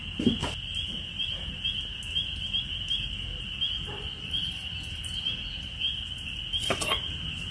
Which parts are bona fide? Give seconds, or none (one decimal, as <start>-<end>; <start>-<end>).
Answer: 0.0-7.5